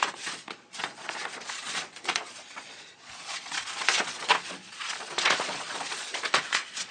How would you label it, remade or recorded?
remade